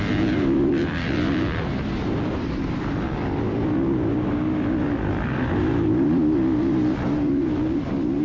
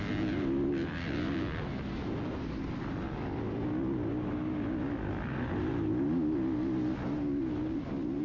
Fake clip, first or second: first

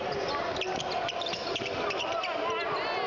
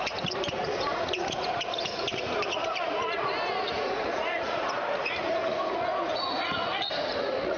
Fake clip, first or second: second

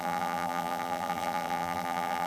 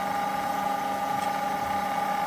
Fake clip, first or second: first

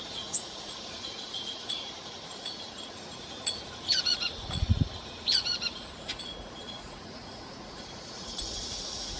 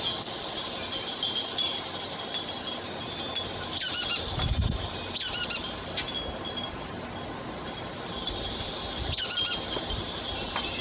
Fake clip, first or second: first